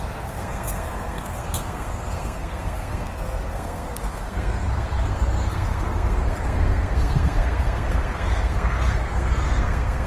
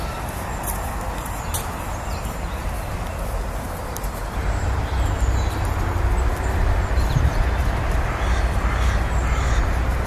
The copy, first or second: first